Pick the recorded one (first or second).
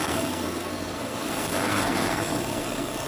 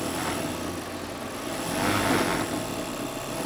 second